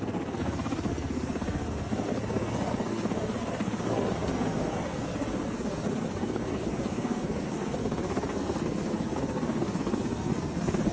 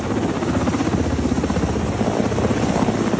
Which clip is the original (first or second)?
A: second